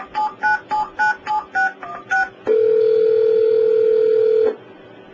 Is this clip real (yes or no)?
yes